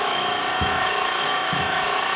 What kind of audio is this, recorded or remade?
remade